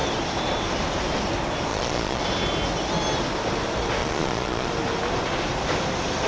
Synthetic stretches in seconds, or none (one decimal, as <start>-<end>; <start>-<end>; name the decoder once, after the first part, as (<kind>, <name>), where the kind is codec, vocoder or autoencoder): 1.7-2.2 (vocoder, Vocos); 4.0-4.7